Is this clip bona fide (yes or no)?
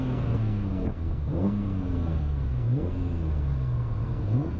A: no